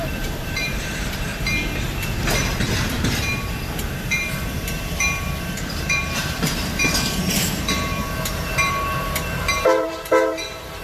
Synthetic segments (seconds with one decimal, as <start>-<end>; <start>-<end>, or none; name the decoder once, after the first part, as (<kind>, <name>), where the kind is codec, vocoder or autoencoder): 0.0-1.3 (vocoder, BigVGAN v2); 2.6-10.8